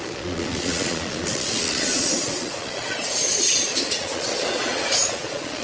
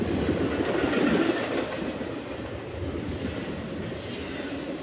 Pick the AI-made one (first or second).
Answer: first